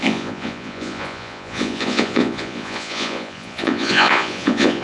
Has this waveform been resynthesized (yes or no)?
yes